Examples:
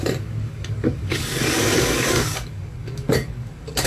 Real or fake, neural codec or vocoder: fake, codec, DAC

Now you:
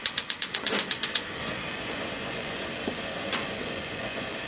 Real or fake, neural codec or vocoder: fake, vocoder, Vocos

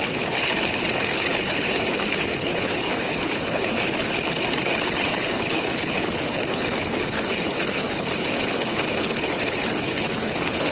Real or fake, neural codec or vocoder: fake, codec, HILCodec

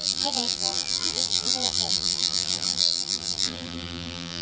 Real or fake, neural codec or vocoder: fake, vocoder, BigVGAN v2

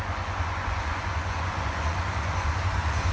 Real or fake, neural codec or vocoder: fake, vocoder, Vocos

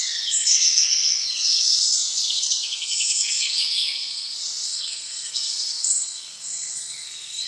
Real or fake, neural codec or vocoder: fake, codec, SNAC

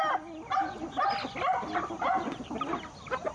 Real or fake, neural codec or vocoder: real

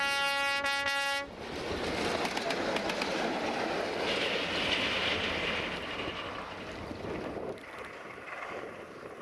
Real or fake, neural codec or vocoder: real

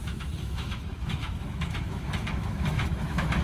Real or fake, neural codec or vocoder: fake, autoencoder, DAC-VAE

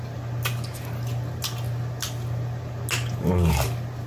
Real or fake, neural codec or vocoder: real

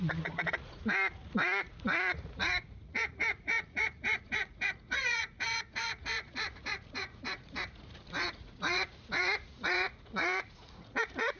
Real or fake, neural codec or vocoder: fake, vocoder, Vocos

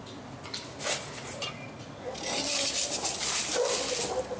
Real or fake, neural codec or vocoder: real